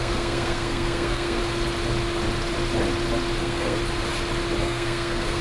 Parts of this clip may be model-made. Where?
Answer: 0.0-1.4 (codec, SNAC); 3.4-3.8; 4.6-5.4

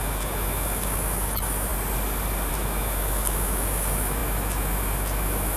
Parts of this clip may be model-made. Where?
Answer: 0.0-1.7 (autoencoder, DAC-VAE); 2.5-5.6

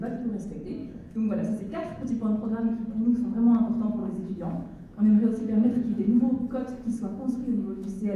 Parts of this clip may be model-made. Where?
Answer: 0.8-2.1 (autoencoder, DAC-VAE); 4.0-6.2; 6.9-8.2

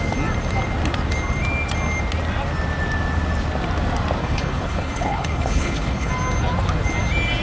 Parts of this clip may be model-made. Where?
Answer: 4.2-6.1 (codec, HILCodec)

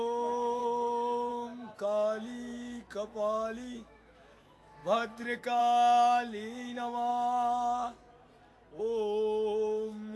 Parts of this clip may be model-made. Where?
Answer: 0.0-0.6 (autoencoder, DAC-VAE); 1.3-7.1; 8.8-10.2